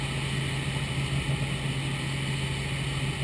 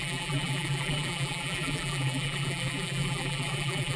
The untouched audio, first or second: first